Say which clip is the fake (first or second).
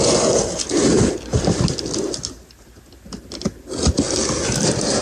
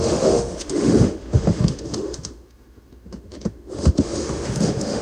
second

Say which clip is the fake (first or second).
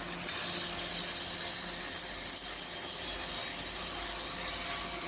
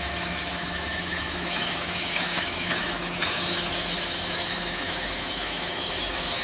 second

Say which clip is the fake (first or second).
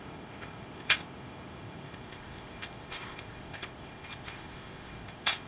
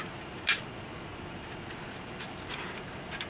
first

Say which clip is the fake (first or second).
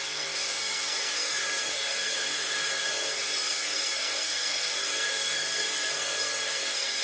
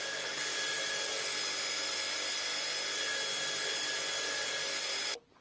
first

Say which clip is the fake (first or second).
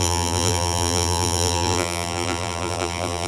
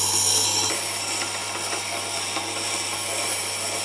first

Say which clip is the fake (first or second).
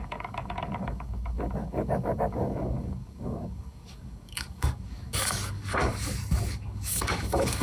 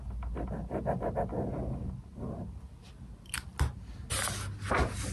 first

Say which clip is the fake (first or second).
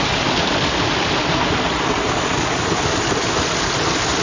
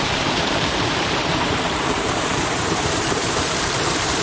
second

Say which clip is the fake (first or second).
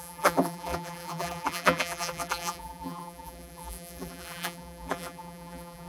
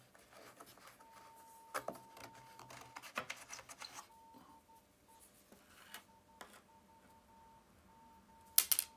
first